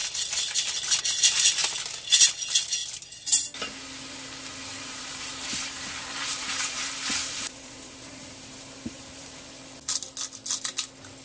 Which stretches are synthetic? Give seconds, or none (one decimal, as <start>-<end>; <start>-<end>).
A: 4.7-9.4